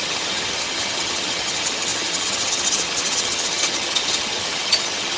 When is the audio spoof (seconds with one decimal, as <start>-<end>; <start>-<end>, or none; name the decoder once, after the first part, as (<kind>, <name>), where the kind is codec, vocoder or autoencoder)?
0.0-5.2 (vocoder, HiFi-GAN)